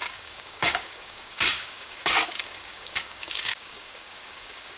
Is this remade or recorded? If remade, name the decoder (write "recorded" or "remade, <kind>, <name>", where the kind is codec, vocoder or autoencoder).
remade, codec, DAC